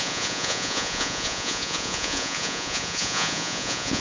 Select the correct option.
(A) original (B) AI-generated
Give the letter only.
B